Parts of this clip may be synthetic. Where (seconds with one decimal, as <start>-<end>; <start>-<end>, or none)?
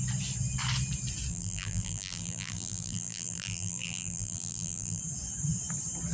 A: 1.3-5.0